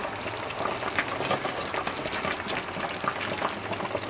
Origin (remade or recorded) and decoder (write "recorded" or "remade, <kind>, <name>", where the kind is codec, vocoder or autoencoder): recorded